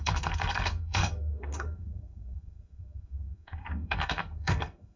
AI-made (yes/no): yes